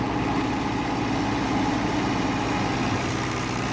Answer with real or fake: real